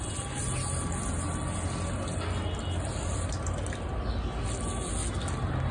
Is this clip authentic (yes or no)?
yes